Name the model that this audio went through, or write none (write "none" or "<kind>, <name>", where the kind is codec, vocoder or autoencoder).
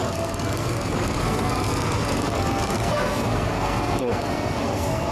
codec, SNAC